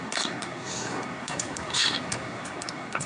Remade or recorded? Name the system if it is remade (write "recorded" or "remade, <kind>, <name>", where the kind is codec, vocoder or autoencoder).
remade, codec, SNAC